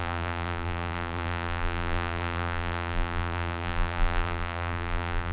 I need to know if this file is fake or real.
fake